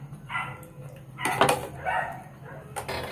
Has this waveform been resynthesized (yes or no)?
no